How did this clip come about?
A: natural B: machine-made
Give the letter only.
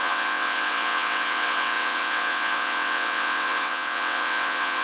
B